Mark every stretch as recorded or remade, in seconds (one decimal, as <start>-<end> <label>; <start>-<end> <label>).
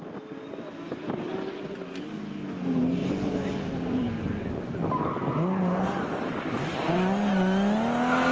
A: 0.0-3.0 recorded; 3.0-4.0 remade; 4.0-8.3 recorded